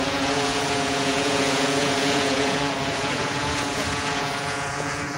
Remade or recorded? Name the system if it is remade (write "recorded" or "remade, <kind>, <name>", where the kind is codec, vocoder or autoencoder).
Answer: remade, vocoder, Vocos